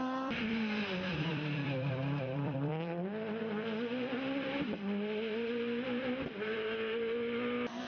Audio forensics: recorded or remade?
remade